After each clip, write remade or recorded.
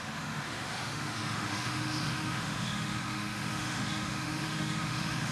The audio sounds remade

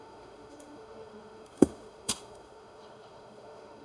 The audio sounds remade